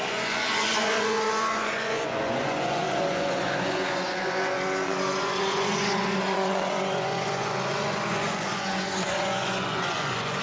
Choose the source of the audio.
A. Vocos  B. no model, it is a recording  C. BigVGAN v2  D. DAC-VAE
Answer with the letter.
A